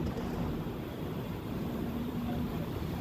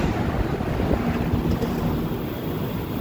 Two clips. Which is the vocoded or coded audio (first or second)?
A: first